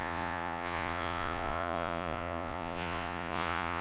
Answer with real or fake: fake